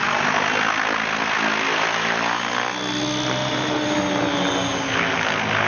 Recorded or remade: recorded